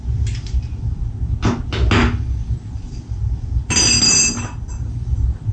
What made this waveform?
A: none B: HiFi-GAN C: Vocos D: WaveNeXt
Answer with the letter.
A